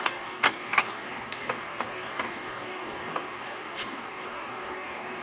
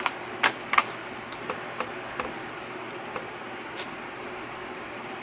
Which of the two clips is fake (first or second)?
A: first